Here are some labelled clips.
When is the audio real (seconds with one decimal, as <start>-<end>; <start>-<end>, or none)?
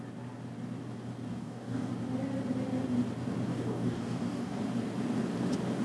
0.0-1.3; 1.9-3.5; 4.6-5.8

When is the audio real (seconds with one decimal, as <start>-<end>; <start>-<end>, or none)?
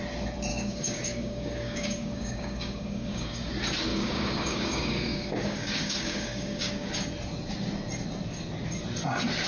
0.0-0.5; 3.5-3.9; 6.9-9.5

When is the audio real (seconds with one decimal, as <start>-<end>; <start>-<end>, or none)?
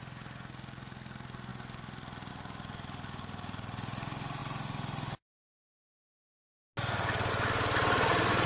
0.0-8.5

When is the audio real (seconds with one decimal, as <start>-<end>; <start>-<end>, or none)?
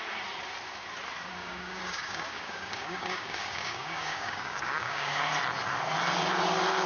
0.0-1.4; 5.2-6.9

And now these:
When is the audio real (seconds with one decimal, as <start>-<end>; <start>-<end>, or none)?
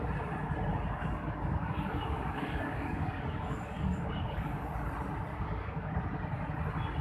0.0-0.7; 4.7-5.3; 5.9-7.0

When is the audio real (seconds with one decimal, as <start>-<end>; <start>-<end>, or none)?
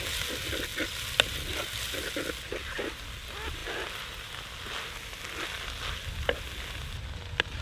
0.0-7.6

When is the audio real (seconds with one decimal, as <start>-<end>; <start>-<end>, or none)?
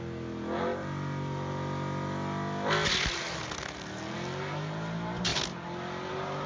0.0-6.5